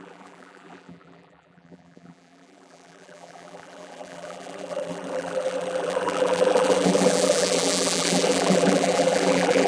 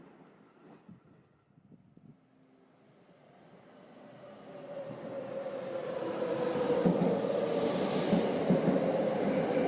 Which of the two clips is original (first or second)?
second